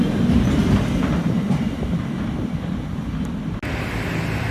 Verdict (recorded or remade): recorded